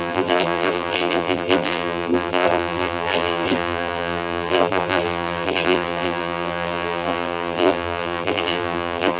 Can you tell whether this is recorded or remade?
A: remade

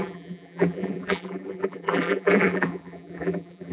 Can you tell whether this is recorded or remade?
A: remade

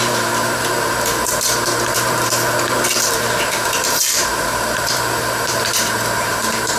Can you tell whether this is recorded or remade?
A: remade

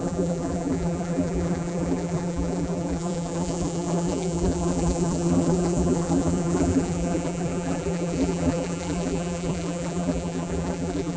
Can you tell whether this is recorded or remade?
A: remade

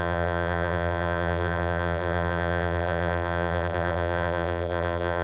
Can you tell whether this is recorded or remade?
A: remade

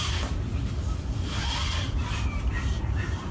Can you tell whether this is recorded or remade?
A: remade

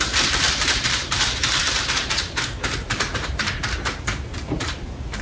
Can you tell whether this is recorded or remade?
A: remade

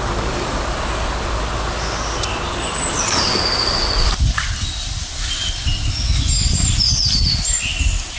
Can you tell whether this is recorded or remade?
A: recorded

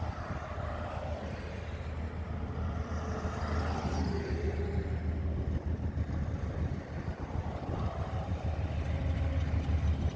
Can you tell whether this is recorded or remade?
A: recorded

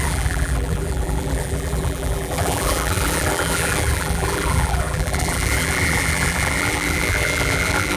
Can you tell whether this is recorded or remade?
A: remade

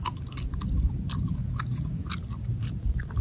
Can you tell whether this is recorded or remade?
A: recorded